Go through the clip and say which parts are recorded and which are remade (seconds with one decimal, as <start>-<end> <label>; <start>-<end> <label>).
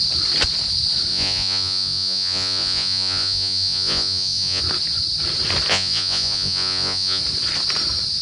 0.0-1.1 recorded; 1.1-4.6 remade; 4.6-5.7 recorded; 5.7-7.2 remade; 7.2-8.2 recorded